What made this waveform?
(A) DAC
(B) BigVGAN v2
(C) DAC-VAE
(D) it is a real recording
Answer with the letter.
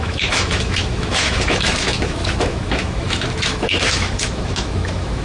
C